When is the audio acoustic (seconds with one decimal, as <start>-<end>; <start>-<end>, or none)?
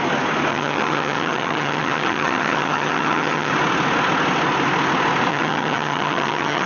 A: 0.0-0.5; 3.5-5.3